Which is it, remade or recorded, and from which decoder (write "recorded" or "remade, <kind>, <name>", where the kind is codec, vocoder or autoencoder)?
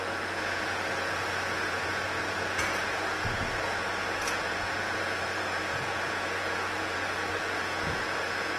remade, vocoder, Vocos